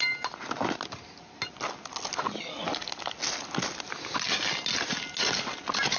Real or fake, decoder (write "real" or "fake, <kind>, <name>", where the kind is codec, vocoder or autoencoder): real